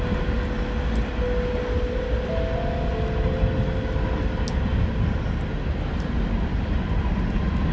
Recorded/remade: recorded